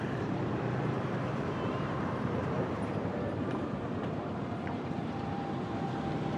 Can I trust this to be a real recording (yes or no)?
no